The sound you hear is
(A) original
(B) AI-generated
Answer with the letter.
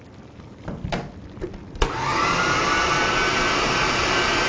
A